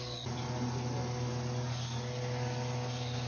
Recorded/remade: recorded